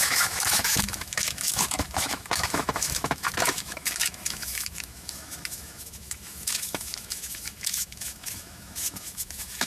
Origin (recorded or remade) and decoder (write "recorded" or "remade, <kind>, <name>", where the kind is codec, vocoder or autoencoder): remade, autoencoder, DAC-VAE